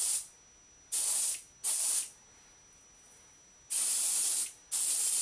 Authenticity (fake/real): real